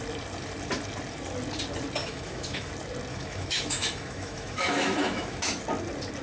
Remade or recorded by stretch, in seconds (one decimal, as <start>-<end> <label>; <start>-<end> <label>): 0.0-2.0 recorded; 2.0-2.7 remade; 2.7-3.1 recorded; 3.1-5.6 remade; 5.6-6.2 recorded